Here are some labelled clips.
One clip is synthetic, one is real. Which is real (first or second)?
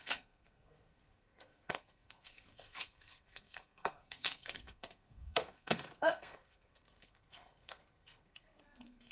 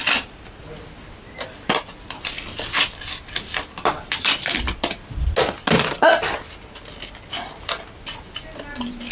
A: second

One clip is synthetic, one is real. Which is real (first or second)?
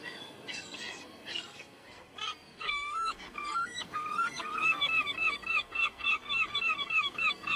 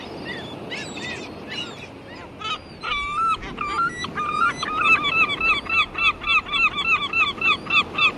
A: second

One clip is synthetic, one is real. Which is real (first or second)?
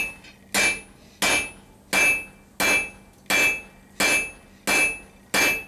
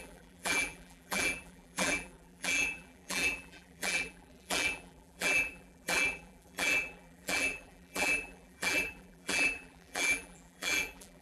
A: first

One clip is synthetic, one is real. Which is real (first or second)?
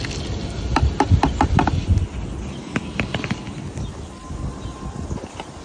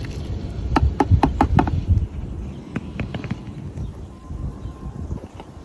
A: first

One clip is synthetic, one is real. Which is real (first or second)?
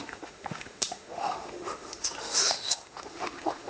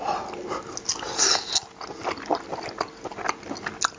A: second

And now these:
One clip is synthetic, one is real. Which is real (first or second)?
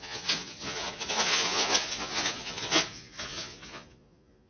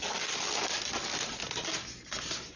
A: second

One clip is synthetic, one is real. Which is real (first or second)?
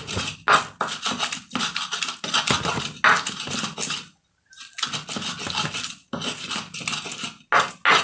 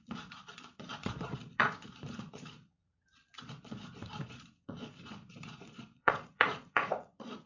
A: first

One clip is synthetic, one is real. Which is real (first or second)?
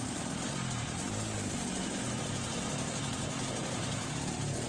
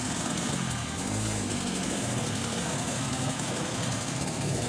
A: first